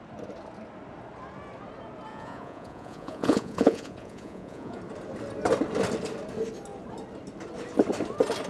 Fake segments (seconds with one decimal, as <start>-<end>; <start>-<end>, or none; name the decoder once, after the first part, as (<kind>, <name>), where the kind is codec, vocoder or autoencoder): 2.1-4.8 (vocoder, Vocos)